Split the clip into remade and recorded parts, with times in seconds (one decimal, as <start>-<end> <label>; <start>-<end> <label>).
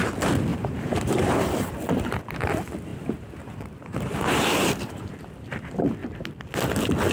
0.0-0.5 recorded; 0.5-1.7 remade; 1.7-2.9 recorded; 2.9-5.1 remade; 5.1-7.1 recorded